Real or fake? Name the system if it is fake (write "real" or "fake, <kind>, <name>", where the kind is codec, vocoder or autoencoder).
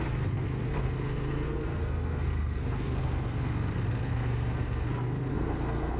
fake, codec, SNAC